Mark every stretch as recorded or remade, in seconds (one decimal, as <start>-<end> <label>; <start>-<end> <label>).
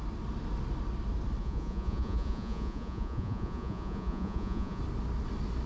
0.0-1.4 recorded; 1.4-4.8 remade; 4.8-5.7 recorded